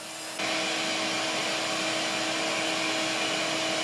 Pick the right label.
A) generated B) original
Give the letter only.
B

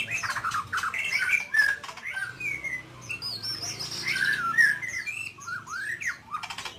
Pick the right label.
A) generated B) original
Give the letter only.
B